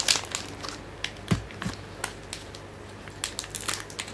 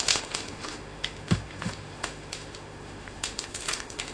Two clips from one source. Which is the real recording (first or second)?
first